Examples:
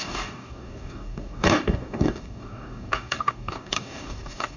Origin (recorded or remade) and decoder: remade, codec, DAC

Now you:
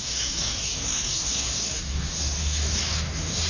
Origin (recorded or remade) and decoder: remade, codec, DAC